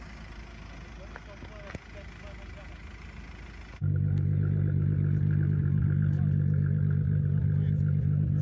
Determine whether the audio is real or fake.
real